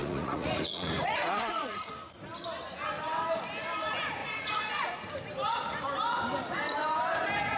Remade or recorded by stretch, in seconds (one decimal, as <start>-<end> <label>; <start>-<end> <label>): 0.0-1.9 remade; 1.9-4.2 recorded; 4.2-5.1 remade; 5.1-7.6 recorded